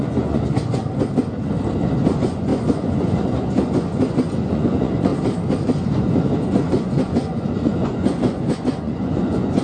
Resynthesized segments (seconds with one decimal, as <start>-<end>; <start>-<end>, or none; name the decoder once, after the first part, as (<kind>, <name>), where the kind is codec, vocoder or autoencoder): 0.0-0.8 (vocoder, Vocos); 2.1-5.1; 5.8-9.6

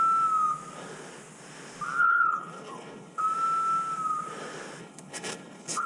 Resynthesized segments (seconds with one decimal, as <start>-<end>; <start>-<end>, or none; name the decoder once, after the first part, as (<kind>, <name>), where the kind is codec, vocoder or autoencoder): 2.0-3.2 (codec, HILCodec); 4.8-5.9